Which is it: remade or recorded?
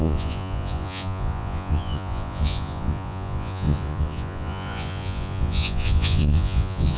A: remade